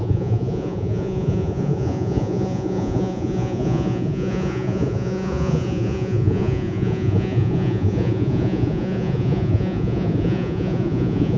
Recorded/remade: remade